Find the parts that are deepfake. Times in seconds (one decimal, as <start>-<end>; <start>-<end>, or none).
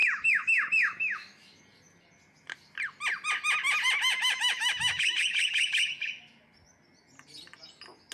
0.0-1.6; 4.1-6.2